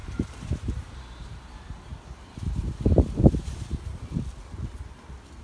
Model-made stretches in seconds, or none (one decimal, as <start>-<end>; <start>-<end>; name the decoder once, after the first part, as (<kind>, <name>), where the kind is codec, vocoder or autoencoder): 0.0-1.9 (vocoder, BigVGAN v2)